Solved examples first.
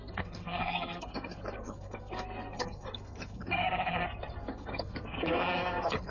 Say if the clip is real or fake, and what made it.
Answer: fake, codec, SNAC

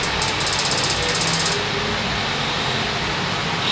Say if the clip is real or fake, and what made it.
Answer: real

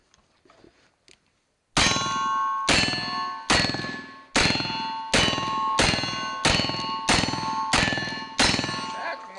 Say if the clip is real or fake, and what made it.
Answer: real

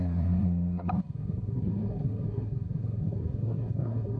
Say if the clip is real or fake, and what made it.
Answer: fake, codec, SNAC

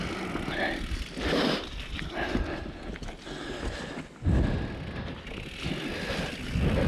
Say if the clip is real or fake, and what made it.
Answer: real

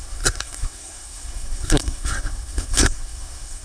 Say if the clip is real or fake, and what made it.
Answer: fake, codec, SNAC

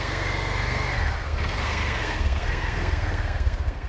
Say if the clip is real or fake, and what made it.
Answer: fake, codec, SNAC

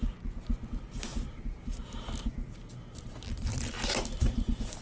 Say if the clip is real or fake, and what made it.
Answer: real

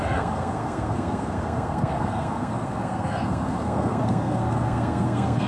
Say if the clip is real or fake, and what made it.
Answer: fake, codec, SNAC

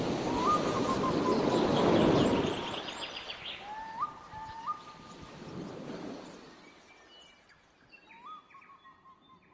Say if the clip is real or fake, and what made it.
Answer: real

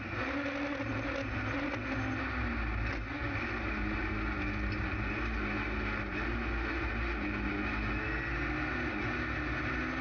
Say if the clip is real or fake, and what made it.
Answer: real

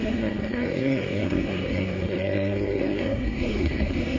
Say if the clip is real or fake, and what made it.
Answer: fake, codec, SNAC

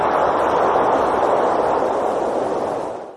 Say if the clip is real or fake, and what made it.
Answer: real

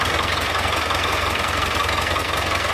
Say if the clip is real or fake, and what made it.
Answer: fake, codec, SNAC